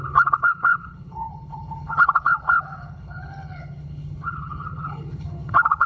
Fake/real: fake